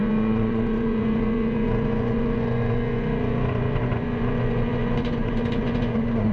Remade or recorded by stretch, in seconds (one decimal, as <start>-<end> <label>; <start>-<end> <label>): 0.0-6.3 remade